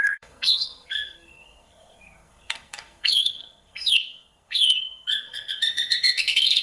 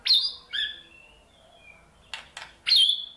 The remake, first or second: first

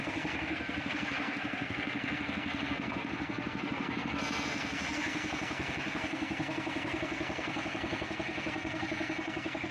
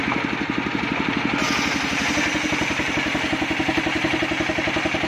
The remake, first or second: first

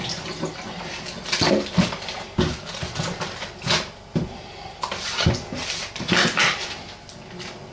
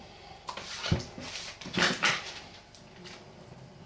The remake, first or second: second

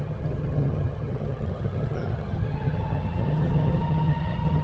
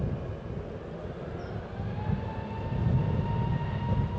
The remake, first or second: first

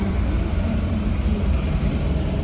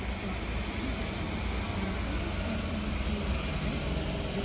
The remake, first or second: first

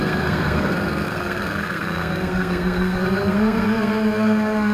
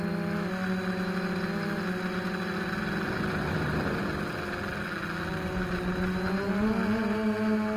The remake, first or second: first